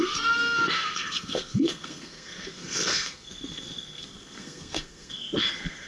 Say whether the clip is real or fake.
fake